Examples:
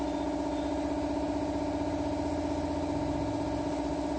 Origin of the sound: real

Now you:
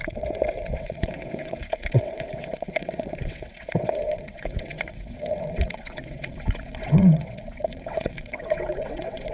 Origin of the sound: fake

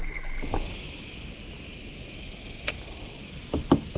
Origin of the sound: real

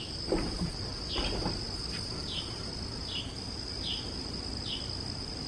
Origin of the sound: real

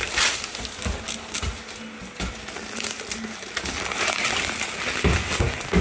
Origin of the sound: real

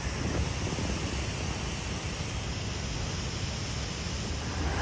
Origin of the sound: real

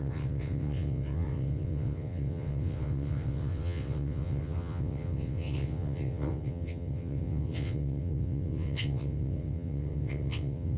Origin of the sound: fake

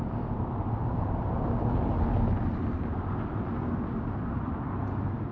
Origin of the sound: real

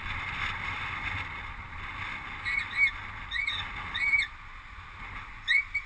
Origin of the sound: real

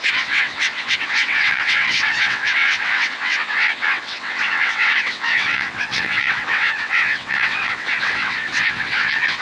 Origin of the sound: fake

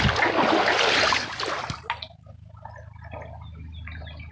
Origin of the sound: real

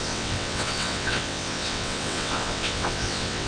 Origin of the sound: fake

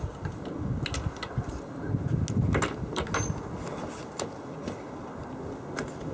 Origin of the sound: real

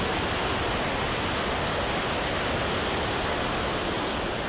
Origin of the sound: real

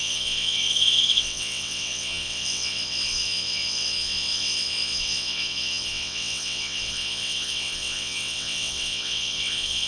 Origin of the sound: fake